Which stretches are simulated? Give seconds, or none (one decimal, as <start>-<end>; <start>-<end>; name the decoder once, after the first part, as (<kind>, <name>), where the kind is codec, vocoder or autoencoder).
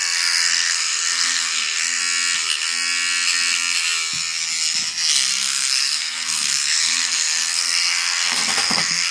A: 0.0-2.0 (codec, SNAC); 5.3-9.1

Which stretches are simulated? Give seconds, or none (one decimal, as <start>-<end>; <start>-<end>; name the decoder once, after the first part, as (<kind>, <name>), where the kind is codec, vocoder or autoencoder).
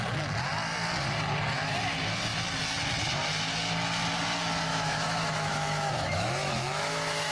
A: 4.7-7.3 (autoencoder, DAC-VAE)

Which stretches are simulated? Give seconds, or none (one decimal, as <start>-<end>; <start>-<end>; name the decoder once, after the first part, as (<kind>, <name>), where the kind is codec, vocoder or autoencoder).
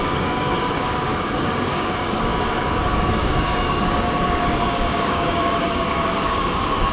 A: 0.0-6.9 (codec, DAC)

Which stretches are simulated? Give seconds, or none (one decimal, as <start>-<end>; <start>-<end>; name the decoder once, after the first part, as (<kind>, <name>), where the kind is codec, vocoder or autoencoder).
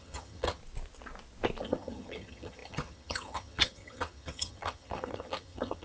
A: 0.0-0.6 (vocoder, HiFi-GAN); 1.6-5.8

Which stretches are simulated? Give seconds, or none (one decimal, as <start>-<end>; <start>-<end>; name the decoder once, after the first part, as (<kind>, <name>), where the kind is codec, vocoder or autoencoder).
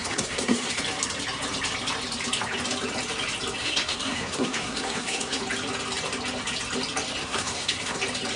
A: 0.0-0.8 (codec, SNAC); 3.6-5.4; 7.2-8.0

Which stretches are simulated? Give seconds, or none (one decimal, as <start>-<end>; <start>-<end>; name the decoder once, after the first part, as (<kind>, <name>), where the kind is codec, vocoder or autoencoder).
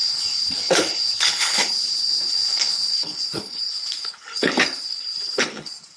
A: 0.0-6.0 (codec, HILCodec)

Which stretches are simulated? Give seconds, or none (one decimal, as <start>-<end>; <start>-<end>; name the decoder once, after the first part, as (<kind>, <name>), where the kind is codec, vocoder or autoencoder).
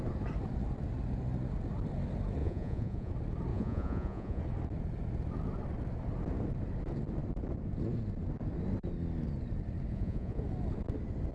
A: 2.4-3.1 (vocoder, Vocos); 3.5-4.4; 9.9-10.4